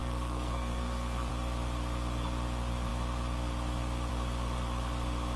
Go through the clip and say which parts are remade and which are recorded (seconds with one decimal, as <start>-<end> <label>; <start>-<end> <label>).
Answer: 0.0-1.3 remade; 1.3-5.4 recorded